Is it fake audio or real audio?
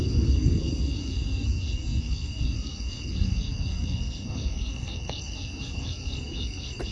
fake